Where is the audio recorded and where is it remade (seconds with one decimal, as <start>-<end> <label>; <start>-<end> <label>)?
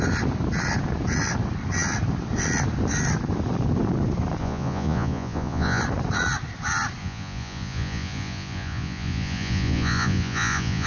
0.0-4.4 recorded; 4.4-5.8 remade; 5.8-7.0 recorded; 7.0-10.9 remade